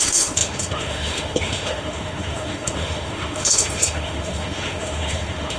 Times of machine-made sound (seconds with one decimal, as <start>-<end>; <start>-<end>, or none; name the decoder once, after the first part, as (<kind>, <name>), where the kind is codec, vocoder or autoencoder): 0.0-5.6 (autoencoder, DAC-VAE)